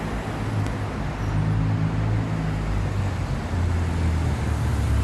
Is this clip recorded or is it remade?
recorded